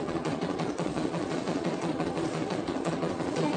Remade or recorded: remade